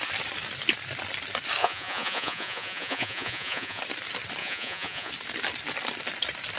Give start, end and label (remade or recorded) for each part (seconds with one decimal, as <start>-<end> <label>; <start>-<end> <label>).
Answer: 0.0-1.6 recorded; 1.6-3.8 remade; 3.8-4.4 recorded; 4.4-5.1 remade; 5.1-6.6 recorded